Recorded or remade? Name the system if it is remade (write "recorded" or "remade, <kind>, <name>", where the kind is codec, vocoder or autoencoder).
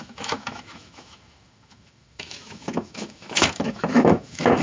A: remade, autoencoder, DAC-VAE